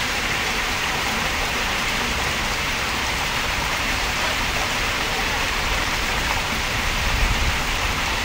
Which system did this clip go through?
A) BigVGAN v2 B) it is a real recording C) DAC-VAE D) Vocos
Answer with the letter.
A